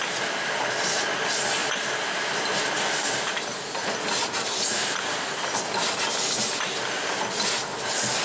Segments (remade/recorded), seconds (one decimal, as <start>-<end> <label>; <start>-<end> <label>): 0.0-8.2 recorded

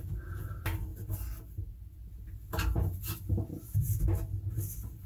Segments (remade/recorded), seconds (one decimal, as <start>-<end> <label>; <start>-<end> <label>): 0.0-5.1 recorded

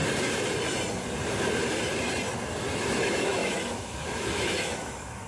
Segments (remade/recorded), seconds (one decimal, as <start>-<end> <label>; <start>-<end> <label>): 0.0-3.0 recorded; 3.0-5.3 remade

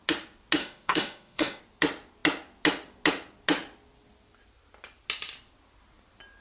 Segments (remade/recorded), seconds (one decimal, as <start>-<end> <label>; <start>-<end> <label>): 0.0-0.6 recorded; 0.6-1.6 remade; 1.6-6.4 recorded

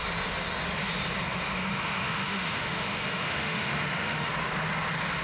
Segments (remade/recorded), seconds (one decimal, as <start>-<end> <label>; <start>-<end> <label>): 0.0-1.7 recorded; 1.7-4.3 remade; 4.3-5.2 recorded

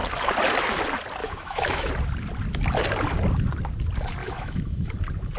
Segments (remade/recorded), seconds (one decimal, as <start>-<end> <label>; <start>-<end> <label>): 0.0-1.2 recorded; 1.2-1.9 remade; 1.9-4.2 recorded; 4.2-4.9 remade; 4.9-5.4 recorded

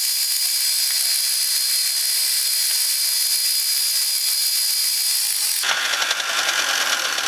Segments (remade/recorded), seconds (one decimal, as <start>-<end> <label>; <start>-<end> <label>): 0.0-7.3 recorded